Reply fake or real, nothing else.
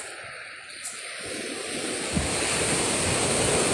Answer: real